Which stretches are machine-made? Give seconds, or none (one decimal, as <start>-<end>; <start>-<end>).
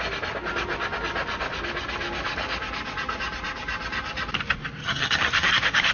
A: 4.8-5.5